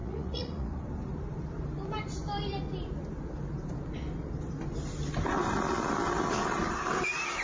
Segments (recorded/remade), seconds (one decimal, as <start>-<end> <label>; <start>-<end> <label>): 0.0-0.8 remade; 0.8-7.4 recorded